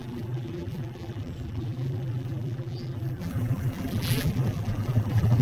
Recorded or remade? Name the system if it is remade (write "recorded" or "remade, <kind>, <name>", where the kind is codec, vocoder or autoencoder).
remade, vocoder, BigVGAN v2